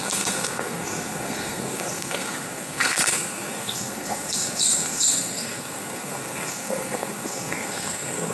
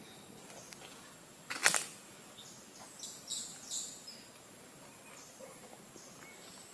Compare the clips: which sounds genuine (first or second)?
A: second